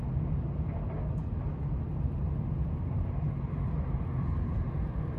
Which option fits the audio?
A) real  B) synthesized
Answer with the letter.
A